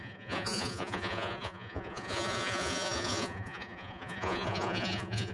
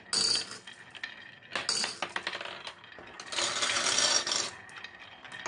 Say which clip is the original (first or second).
second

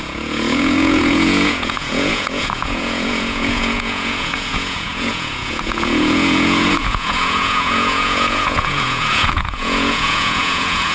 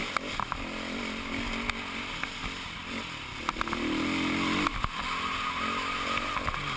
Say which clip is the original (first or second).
second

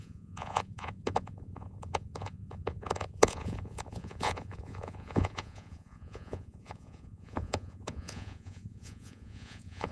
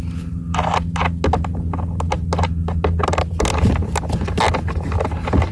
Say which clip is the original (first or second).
second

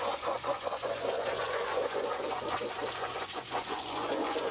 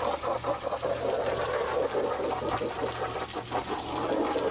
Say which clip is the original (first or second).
second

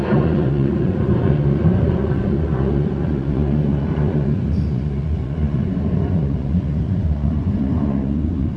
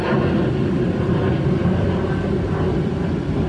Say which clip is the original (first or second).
second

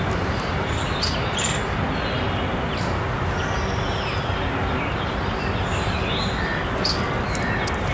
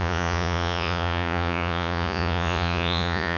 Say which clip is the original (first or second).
first